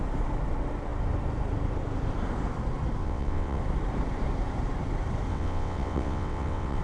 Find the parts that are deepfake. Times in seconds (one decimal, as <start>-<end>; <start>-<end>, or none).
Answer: 3.0-3.6; 5.3-6.8